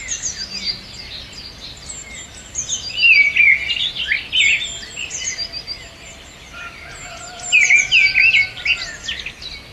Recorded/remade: recorded